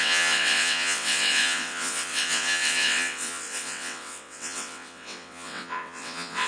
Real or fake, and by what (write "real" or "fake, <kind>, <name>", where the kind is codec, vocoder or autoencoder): fake, vocoder, WaveNeXt